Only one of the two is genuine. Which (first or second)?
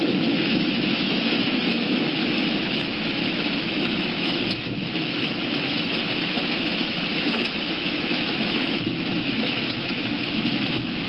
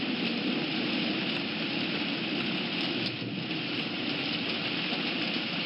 second